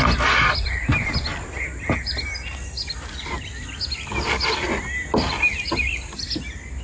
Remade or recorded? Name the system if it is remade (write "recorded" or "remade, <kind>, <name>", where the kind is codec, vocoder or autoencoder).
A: recorded